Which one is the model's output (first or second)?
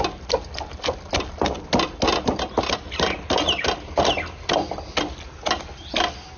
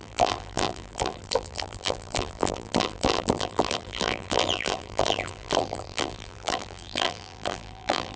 second